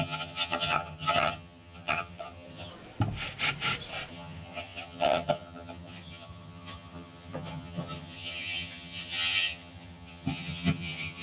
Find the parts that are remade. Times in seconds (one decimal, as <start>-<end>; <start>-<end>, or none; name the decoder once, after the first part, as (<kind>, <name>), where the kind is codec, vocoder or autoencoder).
0.0-2.7 (vocoder, HiFi-GAN); 4.1-11.2